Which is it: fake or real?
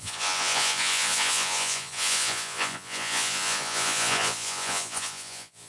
fake